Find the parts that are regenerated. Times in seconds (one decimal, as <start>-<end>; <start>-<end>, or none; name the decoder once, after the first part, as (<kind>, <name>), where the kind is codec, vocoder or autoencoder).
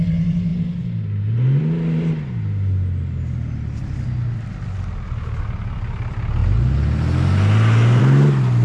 none